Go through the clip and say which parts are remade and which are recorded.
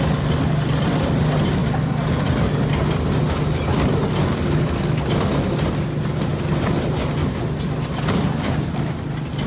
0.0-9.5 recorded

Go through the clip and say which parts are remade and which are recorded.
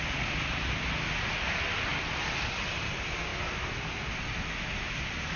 0.0-5.4 recorded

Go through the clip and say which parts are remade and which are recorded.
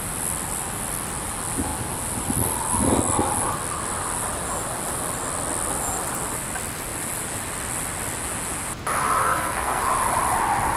0.0-9.2 recorded; 9.2-9.9 remade; 9.9-10.8 recorded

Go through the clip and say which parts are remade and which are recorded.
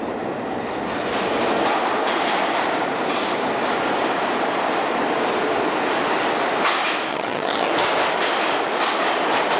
0.0-7.1 recorded; 7.1-7.7 remade; 7.7-9.6 recorded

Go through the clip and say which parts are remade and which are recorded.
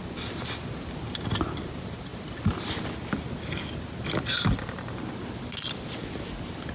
0.0-6.7 recorded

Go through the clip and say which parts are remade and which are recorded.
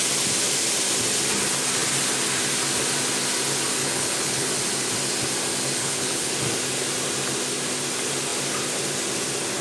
0.0-3.8 recorded; 3.8-4.5 remade; 4.5-5.8 recorded; 5.8-6.3 remade; 6.3-9.6 recorded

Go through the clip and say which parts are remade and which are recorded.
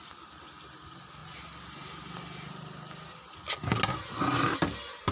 0.0-5.1 recorded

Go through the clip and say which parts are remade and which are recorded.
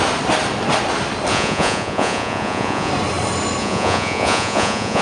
0.0-1.3 recorded; 1.3-2.9 remade; 2.9-3.6 recorded; 3.6-5.0 remade